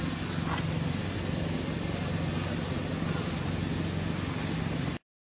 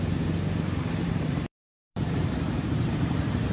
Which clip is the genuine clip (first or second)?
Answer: first